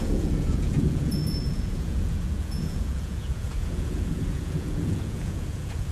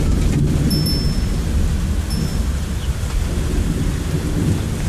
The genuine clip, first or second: second